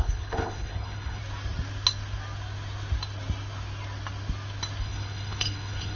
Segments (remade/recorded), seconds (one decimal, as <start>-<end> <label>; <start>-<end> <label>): 0.0-1.2 remade; 1.2-4.8 recorded; 4.8-6.0 remade